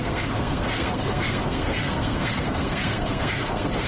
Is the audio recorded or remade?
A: remade